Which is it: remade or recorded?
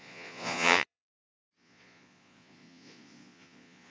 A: remade